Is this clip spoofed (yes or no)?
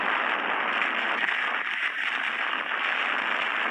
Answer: no